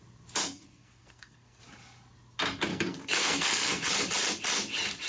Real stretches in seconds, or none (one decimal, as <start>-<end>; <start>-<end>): 0.0-0.4; 1.6-2.7; 3.9-5.1